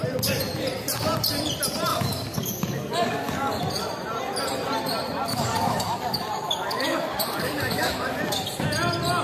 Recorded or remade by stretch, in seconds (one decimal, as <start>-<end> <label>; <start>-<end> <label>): 0.0-1.9 recorded; 1.9-3.6 remade; 3.6-5.3 recorded; 5.3-8.2 remade; 8.2-9.2 recorded